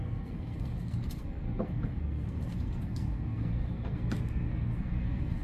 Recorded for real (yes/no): no